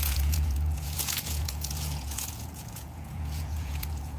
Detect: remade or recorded remade